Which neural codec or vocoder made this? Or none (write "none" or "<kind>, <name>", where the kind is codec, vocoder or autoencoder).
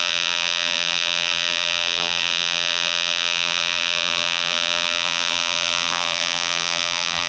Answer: vocoder, BigVGAN v2